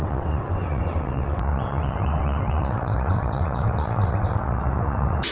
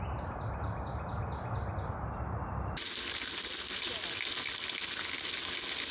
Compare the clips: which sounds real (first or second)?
second